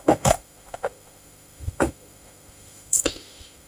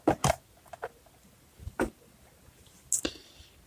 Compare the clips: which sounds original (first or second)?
second